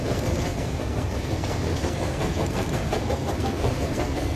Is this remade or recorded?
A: remade